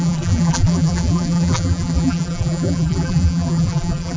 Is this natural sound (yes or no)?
no